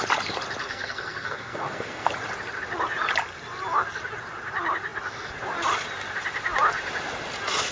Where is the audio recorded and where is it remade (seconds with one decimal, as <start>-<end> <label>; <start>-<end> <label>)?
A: 0.0-0.6 recorded; 0.6-2.1 remade; 2.1-7.7 recorded